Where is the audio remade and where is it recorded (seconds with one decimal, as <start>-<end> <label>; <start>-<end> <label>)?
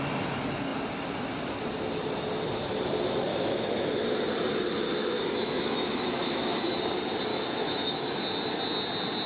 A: 0.0-3.3 recorded; 3.3-3.9 remade; 3.9-5.0 recorded; 5.0-6.8 remade; 6.8-7.3 recorded; 7.3-8.2 remade; 8.2-9.3 recorded